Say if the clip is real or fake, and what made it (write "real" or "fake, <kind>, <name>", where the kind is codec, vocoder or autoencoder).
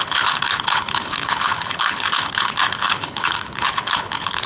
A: fake, codec, HILCodec